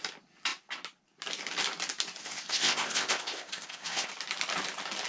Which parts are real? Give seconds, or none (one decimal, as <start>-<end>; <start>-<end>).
0.0-2.2; 4.1-5.1